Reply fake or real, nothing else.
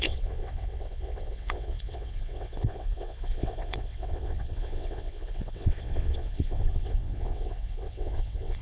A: fake